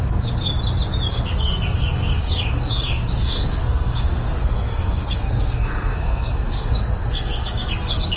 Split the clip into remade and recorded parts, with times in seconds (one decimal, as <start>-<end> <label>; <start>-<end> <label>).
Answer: 0.0-0.5 remade; 0.5-1.1 recorded; 1.1-8.2 remade